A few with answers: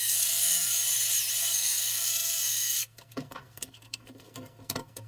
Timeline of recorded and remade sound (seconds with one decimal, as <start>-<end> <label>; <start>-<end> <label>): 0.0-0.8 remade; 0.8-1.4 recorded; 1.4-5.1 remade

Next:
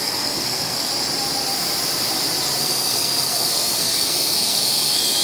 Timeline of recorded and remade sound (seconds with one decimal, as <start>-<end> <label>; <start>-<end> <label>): 0.0-0.9 remade; 0.9-2.6 recorded; 2.6-5.2 remade

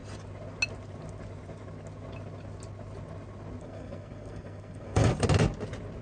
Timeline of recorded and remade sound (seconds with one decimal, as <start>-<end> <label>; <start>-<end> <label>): 0.0-3.6 recorded; 3.6-5.1 remade; 5.1-6.0 recorded

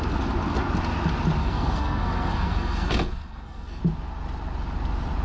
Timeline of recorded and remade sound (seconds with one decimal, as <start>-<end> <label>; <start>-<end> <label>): 0.0-1.4 recorded; 1.4-3.8 remade; 3.8-5.2 recorded

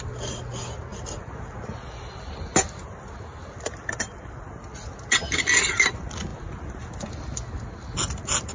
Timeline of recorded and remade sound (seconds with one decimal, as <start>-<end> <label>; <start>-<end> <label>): 0.0-8.5 recorded

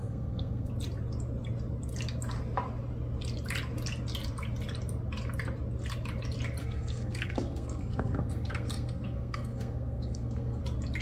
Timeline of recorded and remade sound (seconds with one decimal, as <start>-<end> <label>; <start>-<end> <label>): 0.0-0.7 remade; 0.7-6.6 recorded; 6.6-10.6 remade; 10.6-11.0 recorded

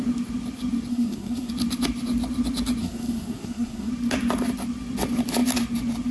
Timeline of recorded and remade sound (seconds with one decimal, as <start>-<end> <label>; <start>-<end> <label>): 0.0-0.9 recorded; 0.9-1.5 remade; 1.5-2.8 recorded; 2.8-3.9 remade; 3.9-6.1 recorded